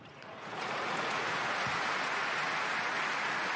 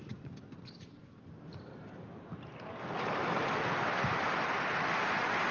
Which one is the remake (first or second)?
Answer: first